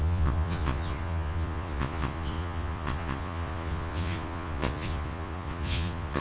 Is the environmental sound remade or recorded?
remade